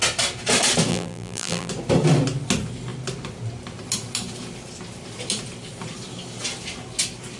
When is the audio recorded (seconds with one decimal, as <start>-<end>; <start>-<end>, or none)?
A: 0.0-0.9; 1.7-7.4